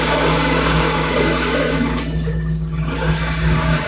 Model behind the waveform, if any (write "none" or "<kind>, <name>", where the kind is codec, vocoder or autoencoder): codec, DAC